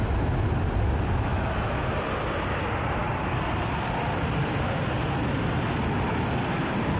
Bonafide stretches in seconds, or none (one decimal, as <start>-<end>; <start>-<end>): 0.0-1.3; 1.9-7.0